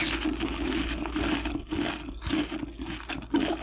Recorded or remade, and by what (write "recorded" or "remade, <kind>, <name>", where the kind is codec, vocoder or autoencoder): recorded